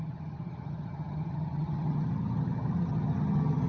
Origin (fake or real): fake